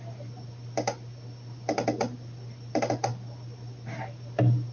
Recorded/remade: recorded